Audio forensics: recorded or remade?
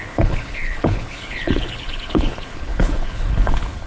remade